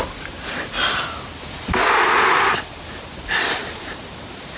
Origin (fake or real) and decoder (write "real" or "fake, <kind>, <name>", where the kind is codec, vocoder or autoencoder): real